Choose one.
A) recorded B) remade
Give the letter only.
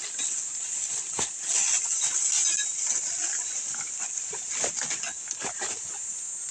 A